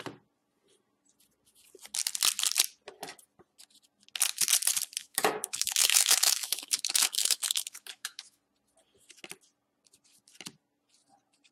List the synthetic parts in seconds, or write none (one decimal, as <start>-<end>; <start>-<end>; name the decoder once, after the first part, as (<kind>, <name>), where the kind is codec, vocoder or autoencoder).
5.0-8.4 (autoencoder, DAC-VAE)